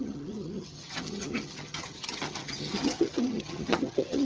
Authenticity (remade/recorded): remade